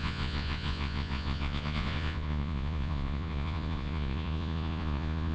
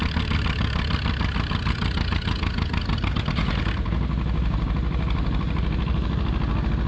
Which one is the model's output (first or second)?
first